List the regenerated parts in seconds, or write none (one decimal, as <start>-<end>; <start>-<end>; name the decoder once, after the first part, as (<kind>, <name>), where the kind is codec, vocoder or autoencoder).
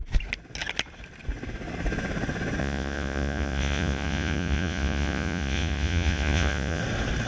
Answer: 2.6-6.8 (vocoder, Vocos)